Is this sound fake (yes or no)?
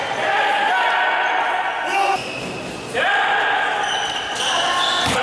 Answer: no